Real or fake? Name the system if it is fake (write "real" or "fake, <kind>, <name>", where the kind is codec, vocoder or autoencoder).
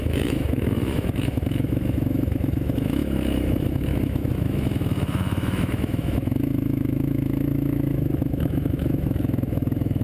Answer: fake, autoencoder, DAC-VAE